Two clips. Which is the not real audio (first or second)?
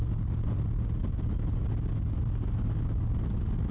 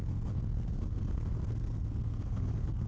second